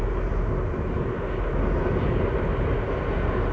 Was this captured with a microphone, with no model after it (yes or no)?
yes